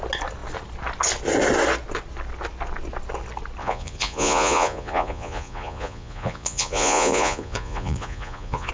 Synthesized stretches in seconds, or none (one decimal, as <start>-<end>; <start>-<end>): 3.6-8.7